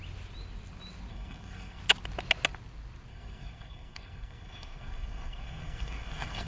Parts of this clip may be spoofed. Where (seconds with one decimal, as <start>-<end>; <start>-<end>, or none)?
1.1-1.8; 3.1-6.5